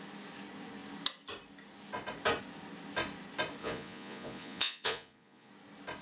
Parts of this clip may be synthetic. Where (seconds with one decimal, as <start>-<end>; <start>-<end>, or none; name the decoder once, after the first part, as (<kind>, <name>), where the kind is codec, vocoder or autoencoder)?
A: 3.6-5.5 (vocoder, Vocos)